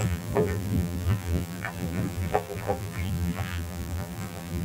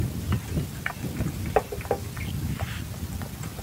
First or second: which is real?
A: second